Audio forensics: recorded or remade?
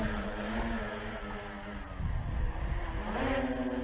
recorded